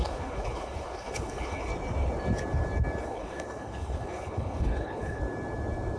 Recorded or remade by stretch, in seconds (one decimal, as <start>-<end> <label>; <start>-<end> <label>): 0.0-1.7 remade; 1.7-3.0 recorded; 3.0-5.2 remade; 5.2-6.0 recorded